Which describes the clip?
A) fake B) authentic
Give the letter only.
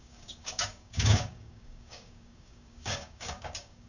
A